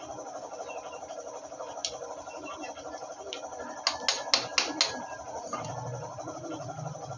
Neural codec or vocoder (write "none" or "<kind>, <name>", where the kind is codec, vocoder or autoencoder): none